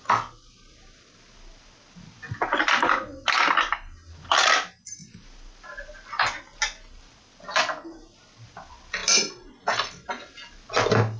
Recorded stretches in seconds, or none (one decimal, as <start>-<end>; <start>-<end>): 0.0-11.2